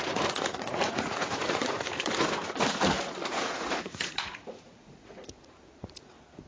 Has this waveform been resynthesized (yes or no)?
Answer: yes